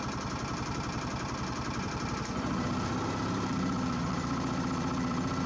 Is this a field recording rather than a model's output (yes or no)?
no